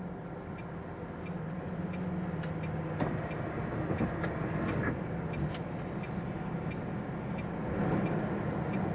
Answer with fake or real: real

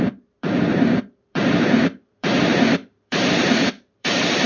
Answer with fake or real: fake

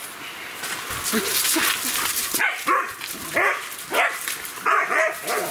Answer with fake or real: real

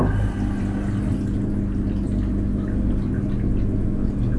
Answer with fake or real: real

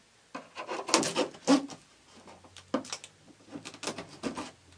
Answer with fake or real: real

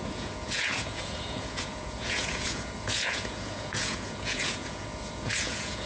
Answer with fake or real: fake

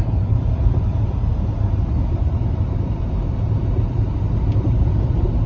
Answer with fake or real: real